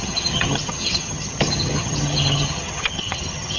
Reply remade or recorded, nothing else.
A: remade